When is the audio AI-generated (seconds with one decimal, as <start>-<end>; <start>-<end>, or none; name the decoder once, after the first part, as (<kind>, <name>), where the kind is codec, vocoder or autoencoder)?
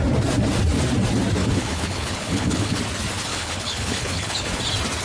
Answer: 1.4-2.8 (codec, HILCodec); 3.3-4.6